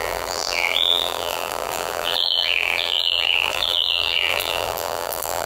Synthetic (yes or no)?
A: yes